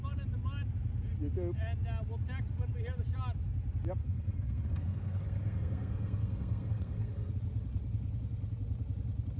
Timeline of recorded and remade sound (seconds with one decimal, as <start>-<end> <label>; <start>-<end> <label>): 0.0-4.0 recorded; 4.0-7.3 remade; 7.3-9.4 recorded